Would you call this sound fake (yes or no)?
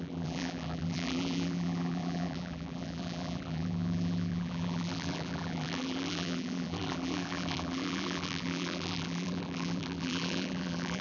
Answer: yes